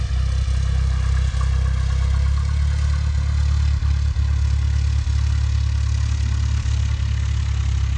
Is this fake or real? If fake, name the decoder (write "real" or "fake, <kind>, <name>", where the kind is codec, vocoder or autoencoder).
real